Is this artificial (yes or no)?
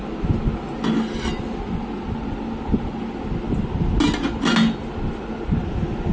no